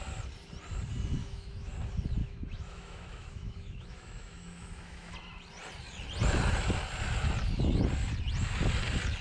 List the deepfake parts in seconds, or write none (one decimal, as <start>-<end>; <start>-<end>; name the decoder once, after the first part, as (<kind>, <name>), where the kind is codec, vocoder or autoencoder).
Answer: 1.2-1.7 (autoencoder, DAC-VAE); 2.2-5.1